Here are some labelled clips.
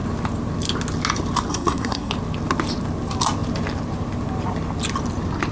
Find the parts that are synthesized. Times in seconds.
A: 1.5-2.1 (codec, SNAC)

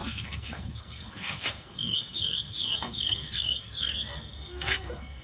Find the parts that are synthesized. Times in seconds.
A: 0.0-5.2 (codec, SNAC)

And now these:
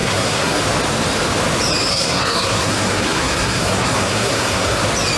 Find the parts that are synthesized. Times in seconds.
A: 0.0-0.6 (codec, SNAC); 1.9-4.8